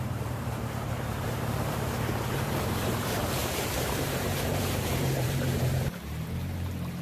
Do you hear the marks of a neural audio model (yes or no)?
yes